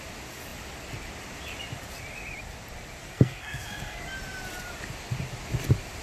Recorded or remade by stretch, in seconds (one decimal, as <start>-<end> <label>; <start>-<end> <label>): 0.0-3.0 recorded; 3.0-4.0 remade; 4.0-6.0 recorded